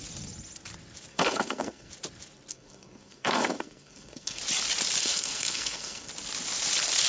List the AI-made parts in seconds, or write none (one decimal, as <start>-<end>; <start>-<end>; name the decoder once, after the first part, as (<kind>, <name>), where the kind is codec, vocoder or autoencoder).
1.1-1.9 (codec, SNAC); 2.5-4.4; 5.0-6.1